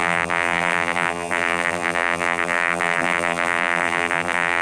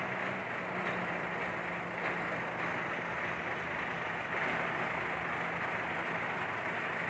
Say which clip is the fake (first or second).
first